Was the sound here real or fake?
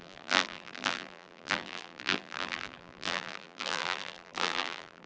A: fake